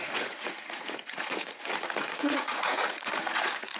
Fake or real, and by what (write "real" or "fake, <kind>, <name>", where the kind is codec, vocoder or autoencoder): fake, vocoder, Vocos